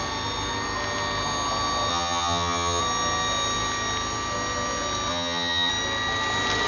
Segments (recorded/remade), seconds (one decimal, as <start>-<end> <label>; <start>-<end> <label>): 0.0-1.9 recorded; 1.9-2.8 remade; 2.8-5.1 recorded; 5.1-5.7 remade; 5.7-6.7 recorded